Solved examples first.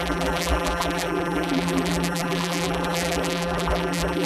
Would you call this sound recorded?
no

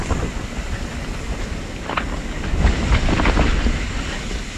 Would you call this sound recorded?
yes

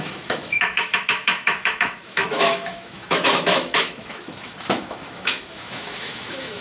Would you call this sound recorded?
no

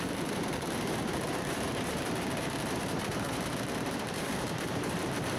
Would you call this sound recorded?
no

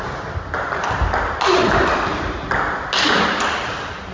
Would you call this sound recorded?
yes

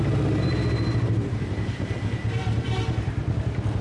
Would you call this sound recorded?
yes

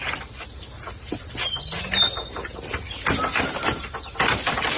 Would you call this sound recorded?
yes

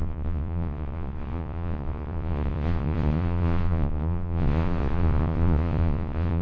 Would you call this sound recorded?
no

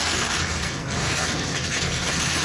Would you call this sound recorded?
no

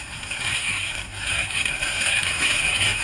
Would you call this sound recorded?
no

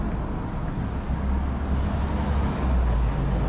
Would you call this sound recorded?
yes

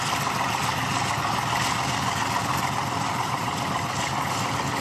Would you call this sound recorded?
yes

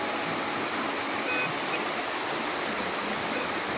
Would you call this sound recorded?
yes